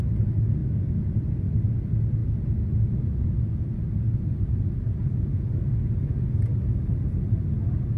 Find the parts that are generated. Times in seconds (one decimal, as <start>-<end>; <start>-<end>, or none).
5.0-5.7; 6.5-7.2